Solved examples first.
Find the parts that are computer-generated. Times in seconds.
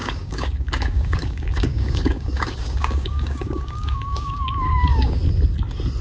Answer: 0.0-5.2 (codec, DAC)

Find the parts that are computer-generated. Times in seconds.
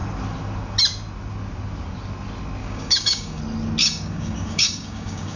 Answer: 2.6-3.4 (codec, DAC); 3.8-5.4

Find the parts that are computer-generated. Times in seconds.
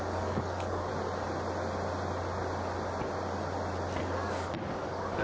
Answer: 0.0-0.9 (codec, DAC); 4.0-5.2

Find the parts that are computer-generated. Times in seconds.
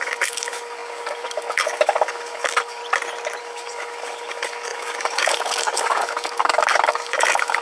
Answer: 0.0-2.8 (codec, DAC); 3.4-7.6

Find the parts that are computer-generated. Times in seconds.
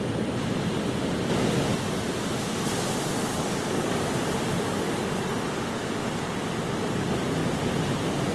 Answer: 3.3-4.1 (codec, DAC); 4.5-5.0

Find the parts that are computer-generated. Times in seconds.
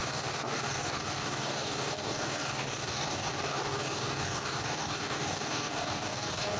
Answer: 0.0-6.6 (codec, DAC)